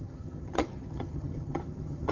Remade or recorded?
remade